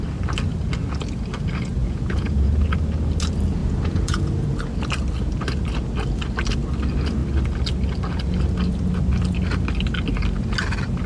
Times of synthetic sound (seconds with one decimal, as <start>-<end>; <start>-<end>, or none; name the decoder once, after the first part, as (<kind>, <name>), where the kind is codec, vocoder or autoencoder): 1.8-2.5 (vocoder, Vocos); 3.6-4.6